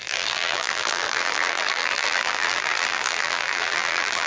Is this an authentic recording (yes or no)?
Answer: no